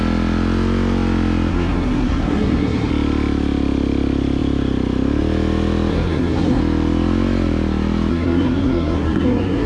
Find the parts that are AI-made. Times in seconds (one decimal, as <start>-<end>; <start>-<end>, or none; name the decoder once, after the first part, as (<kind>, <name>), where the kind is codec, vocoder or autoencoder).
1.5-2.9 (codec, SNAC); 5.9-6.6; 8.1-9.7